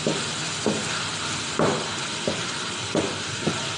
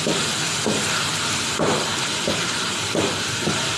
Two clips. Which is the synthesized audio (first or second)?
second